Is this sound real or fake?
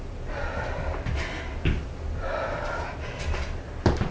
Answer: real